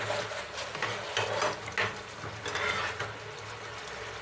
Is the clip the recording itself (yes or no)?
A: yes